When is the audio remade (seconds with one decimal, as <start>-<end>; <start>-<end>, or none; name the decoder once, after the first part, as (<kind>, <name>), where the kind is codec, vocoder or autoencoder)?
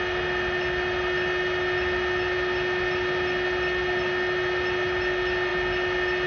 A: none